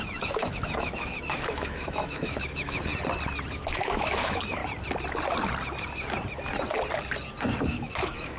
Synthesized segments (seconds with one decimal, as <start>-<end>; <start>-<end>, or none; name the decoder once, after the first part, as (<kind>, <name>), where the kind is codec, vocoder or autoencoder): 0.0-2.9 (autoencoder, DAC-VAE); 3.5-4.6; 7.6-8.4